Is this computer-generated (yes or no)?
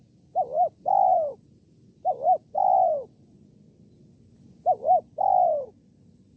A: no